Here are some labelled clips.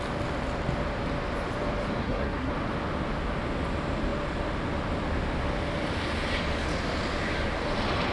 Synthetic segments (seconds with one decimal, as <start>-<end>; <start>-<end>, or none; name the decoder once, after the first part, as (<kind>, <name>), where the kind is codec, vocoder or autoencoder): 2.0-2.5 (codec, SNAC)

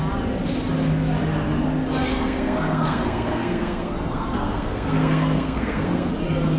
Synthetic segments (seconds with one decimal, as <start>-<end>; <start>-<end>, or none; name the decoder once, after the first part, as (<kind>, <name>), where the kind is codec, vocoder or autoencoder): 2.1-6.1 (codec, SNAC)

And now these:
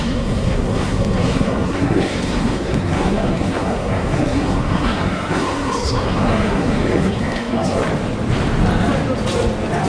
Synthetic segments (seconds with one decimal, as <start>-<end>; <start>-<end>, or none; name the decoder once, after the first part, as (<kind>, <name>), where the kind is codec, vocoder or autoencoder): 0.0-7.8 (codec, SNAC)

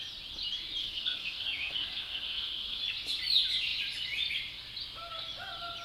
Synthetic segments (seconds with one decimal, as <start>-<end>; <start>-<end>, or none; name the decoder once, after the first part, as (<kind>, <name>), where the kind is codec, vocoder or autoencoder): 0.8-2.8 (codec, SNAC)

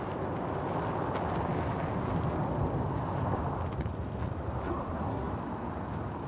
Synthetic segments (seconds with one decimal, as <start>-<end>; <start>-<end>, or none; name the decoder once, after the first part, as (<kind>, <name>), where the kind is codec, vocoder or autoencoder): 4.6-5.3 (codec, SNAC)